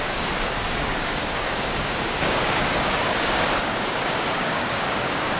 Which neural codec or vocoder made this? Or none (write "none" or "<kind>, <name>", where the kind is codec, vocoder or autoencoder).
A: codec, DAC